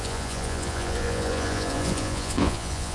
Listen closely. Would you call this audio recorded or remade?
remade